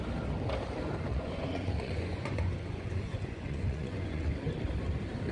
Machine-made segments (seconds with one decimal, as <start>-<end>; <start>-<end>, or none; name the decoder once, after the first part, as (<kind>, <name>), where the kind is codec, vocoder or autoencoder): 1.1-4.3 (vocoder, Vocos)